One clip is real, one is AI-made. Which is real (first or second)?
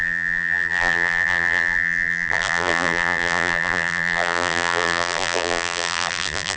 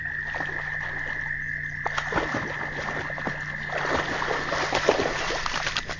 second